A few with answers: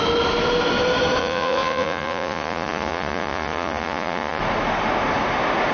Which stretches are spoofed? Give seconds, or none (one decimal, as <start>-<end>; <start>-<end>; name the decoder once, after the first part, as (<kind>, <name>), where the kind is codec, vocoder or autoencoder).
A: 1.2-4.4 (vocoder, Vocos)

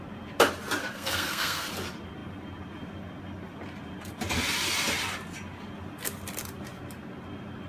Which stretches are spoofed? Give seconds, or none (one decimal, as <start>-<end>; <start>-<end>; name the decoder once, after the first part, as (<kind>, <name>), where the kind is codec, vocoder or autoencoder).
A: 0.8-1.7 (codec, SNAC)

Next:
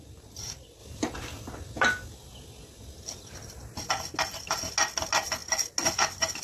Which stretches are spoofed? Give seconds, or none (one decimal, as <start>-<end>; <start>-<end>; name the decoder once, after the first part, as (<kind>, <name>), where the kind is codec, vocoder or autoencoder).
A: none

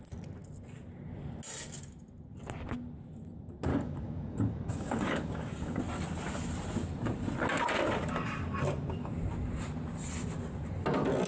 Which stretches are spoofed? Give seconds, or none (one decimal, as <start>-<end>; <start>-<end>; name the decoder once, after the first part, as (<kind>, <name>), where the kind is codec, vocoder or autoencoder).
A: 3.7-5.8 (codec, DAC)

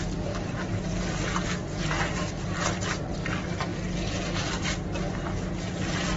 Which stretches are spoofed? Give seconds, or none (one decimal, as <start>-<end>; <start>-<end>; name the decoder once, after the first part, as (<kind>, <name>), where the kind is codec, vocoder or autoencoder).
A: none